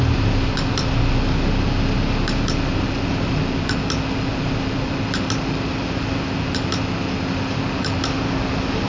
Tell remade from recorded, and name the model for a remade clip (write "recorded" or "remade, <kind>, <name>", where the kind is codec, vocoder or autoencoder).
recorded